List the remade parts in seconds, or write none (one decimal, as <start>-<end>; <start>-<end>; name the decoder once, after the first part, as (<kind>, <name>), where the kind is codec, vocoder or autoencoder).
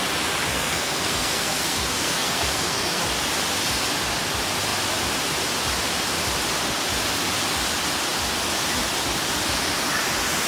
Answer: 0.5-3.0 (codec, SNAC)